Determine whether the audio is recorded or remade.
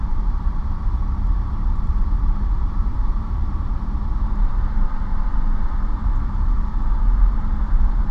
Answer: remade